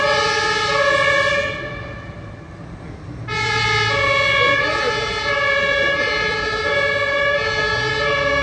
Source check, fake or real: real